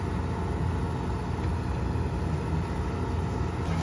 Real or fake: real